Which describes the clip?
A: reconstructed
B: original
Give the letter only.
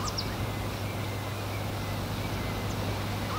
B